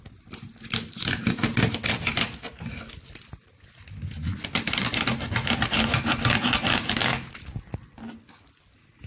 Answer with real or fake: real